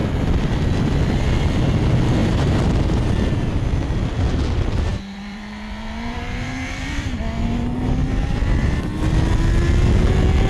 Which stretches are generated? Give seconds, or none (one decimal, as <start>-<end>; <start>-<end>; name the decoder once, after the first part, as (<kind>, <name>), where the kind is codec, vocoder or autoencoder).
2.2-3.1 (vocoder, BigVGAN v2); 4.9-7.2